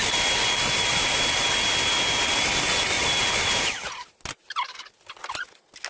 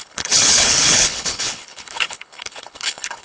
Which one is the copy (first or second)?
second